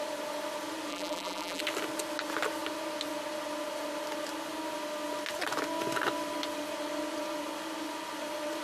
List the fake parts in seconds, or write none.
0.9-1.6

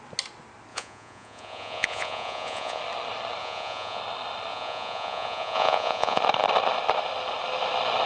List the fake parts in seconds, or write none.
0.7-2.8; 3.4-4.0; 4.5-6.2

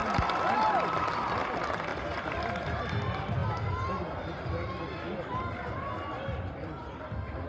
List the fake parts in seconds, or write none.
none

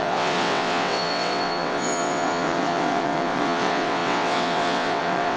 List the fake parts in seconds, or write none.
0.0-5.4

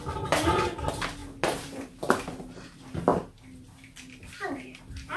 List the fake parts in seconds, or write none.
none

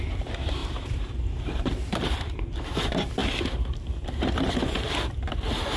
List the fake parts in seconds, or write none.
0.0-3.2; 5.3-5.8

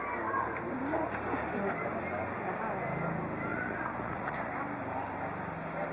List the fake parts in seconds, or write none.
3.5-4.5